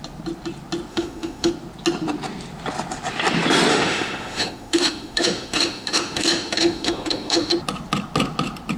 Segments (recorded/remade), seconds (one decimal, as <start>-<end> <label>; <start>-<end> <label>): 0.0-0.9 recorded; 0.9-1.5 remade; 1.5-3.7 recorded; 3.7-7.5 remade; 7.5-8.8 recorded